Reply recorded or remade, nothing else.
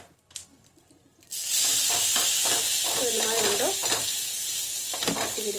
recorded